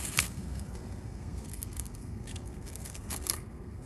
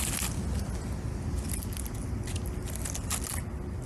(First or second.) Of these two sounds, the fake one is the first